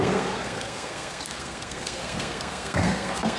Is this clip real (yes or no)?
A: no